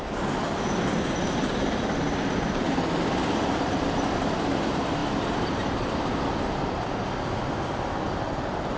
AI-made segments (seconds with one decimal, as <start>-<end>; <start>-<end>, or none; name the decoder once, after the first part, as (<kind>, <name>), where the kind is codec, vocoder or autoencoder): none